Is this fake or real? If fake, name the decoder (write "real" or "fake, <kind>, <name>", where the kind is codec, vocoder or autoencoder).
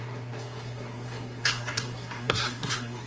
fake, codec, SNAC